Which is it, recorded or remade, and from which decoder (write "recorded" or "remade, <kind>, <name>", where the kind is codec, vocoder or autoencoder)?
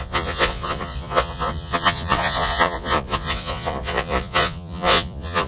remade, vocoder, Vocos